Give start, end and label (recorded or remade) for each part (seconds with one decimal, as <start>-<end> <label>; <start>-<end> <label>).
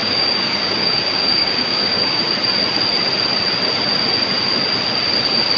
0.0-2.3 remade; 2.3-5.6 recorded